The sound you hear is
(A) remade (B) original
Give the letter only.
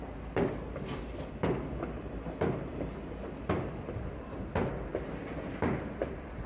B